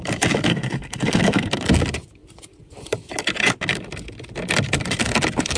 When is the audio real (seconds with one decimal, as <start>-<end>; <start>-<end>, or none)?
0.0-0.5; 1.5-5.6